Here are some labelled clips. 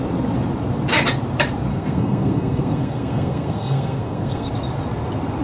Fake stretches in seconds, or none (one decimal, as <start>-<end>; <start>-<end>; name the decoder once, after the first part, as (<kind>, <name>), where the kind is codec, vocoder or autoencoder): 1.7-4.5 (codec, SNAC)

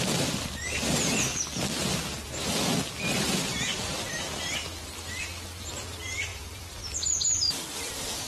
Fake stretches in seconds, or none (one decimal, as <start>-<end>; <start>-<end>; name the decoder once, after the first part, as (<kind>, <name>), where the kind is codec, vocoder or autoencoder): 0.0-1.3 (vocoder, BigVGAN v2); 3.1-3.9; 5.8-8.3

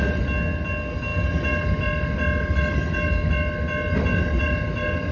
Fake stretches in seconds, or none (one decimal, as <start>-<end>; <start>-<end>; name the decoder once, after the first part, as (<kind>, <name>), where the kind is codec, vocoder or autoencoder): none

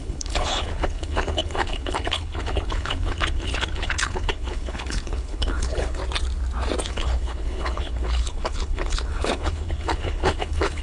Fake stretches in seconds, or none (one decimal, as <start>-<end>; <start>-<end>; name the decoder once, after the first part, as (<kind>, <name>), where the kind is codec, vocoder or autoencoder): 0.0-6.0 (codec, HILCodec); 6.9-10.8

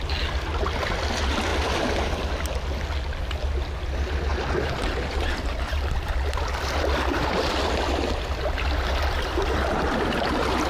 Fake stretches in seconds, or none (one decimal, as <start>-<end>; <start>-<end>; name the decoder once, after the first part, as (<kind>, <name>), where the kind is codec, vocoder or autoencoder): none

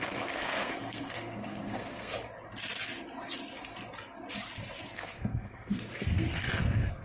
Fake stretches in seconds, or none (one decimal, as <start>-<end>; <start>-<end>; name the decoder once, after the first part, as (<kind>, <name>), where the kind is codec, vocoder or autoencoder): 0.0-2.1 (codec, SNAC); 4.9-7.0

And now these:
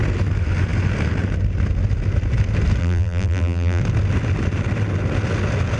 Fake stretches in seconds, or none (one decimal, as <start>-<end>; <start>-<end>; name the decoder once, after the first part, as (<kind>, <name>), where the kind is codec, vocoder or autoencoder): 2.8-3.8 (vocoder, BigVGAN v2)